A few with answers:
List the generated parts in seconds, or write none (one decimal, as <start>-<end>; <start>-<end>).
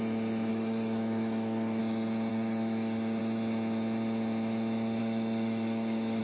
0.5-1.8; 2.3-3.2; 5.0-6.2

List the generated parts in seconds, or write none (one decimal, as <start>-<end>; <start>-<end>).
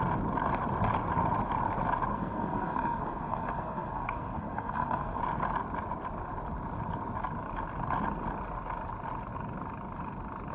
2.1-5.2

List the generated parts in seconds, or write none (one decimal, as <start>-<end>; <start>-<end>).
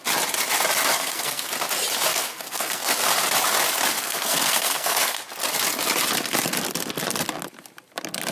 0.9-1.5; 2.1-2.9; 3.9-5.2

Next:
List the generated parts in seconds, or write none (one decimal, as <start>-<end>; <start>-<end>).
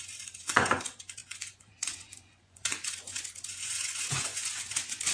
0.0-5.1